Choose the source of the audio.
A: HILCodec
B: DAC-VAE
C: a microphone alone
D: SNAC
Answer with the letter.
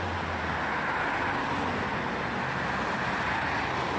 C